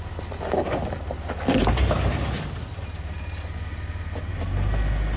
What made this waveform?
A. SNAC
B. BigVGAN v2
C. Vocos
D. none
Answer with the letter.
D